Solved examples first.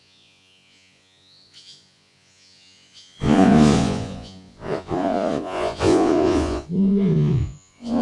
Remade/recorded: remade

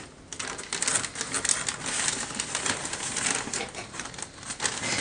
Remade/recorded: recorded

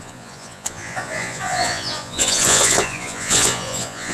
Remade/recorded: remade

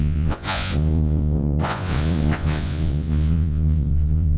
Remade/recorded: remade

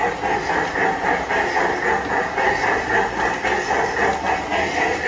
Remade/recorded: recorded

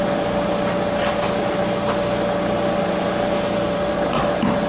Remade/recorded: recorded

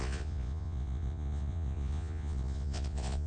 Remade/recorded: remade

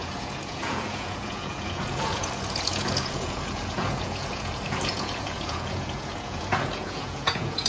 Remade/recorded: remade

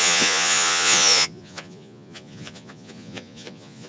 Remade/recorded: remade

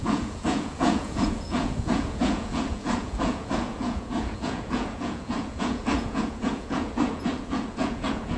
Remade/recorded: remade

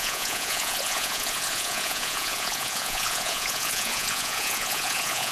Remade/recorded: remade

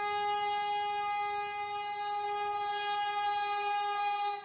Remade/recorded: recorded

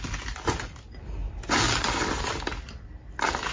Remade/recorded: recorded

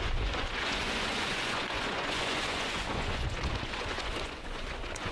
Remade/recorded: remade